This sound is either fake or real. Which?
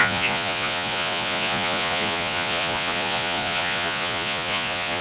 fake